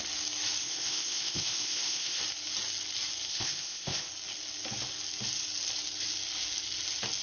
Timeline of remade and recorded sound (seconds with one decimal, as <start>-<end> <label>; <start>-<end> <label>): 0.0-0.6 recorded; 0.6-2.2 remade; 2.2-3.3 recorded; 3.3-4.1 remade; 4.1-7.2 recorded